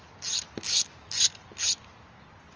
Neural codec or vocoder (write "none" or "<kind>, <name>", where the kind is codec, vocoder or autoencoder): none